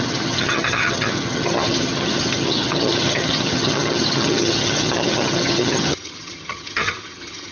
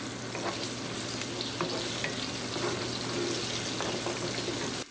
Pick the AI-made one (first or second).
first